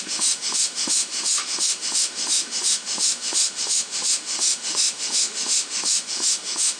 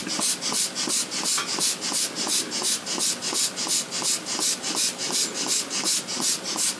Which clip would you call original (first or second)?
second